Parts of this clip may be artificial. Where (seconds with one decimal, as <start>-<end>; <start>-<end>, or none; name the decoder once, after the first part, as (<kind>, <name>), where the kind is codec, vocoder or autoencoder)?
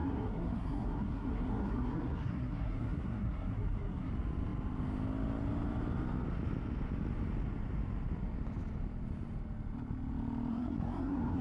0.0-4.1 (codec, SNAC); 10.5-11.4